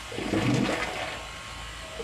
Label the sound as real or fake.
real